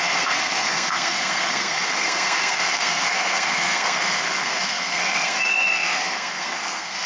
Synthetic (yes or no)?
yes